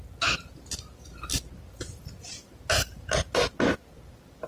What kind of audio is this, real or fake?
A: real